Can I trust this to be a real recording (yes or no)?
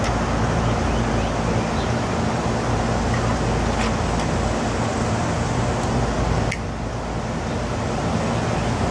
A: yes